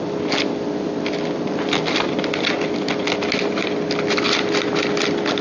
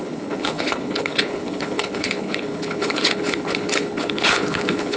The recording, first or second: first